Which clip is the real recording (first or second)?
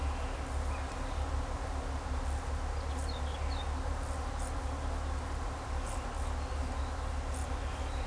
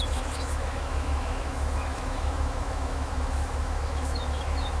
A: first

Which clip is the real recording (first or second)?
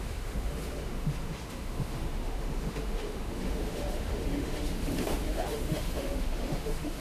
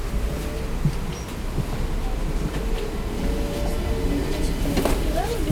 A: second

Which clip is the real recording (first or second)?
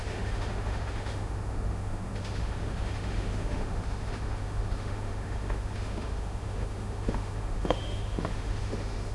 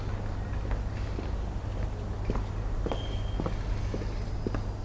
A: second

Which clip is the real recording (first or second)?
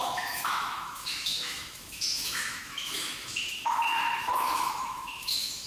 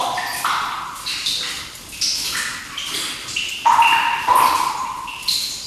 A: second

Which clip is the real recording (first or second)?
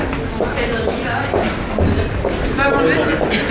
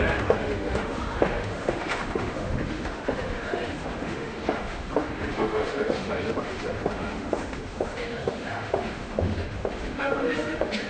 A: first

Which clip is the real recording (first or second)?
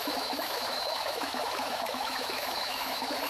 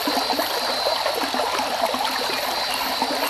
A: second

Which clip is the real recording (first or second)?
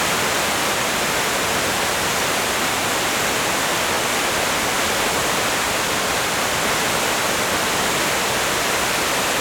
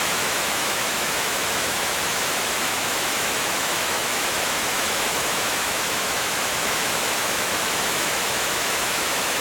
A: first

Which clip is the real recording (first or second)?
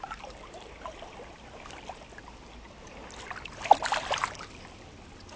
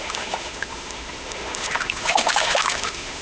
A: first